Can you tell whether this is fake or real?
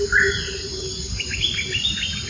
real